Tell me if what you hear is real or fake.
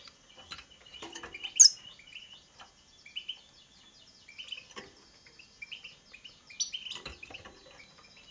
real